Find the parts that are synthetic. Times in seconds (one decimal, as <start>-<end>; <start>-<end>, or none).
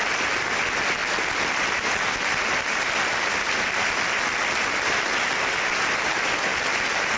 none